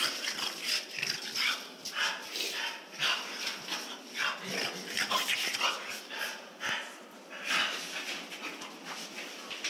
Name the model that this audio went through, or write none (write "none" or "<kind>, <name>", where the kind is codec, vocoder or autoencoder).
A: none